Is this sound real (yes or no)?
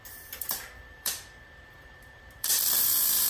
no